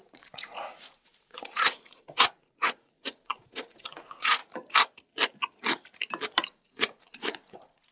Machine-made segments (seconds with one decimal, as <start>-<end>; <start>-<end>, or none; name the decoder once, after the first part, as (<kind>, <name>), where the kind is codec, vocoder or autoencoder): 0.0-4.4 (vocoder, Vocos); 6.4-7.9